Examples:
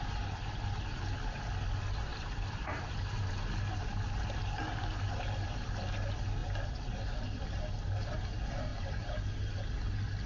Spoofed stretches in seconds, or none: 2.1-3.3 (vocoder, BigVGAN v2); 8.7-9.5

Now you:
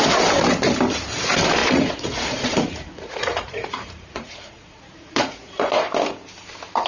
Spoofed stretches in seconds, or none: 1.6-5.7 (vocoder, Vocos)

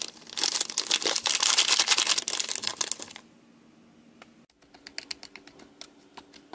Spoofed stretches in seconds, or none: none

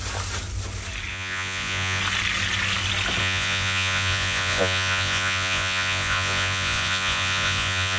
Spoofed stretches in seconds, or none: 1.1-2.0 (vocoder, Vocos); 3.2-8.0

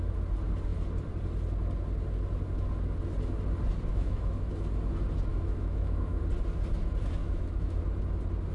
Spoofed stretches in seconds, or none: 3.9-4.5 (autoencoder, DAC-VAE); 5.3-6.2; 7.2-7.8

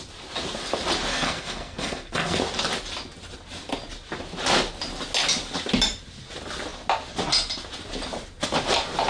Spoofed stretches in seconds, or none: 1.1-2.4 (codec, SNAC)

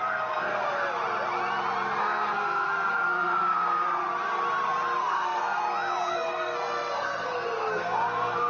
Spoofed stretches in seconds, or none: 0.0-0.8 (codec, SNAC); 2.0-4.0; 5.0-5.6; 6.1-8.5